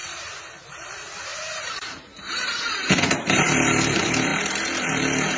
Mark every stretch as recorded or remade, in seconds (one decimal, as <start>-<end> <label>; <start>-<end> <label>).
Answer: 0.0-5.4 remade